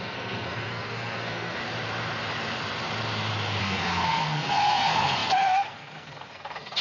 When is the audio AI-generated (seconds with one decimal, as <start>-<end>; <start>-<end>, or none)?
0.0-1.6; 3.6-6.8